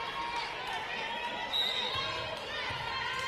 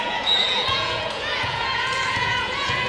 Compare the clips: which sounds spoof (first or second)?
second